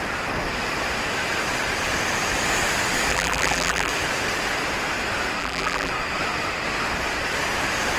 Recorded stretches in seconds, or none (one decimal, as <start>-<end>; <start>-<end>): 0.0-3.1; 3.9-5.4; 5.9-8.0